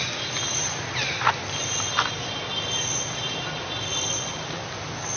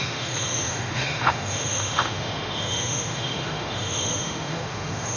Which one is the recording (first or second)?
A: first